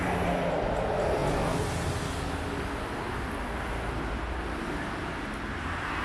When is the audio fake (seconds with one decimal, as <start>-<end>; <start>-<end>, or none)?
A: none